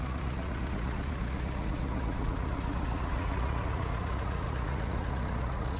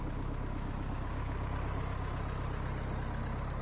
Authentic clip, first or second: second